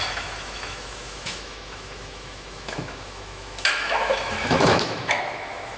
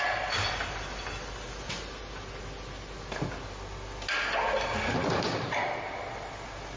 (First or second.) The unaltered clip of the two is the second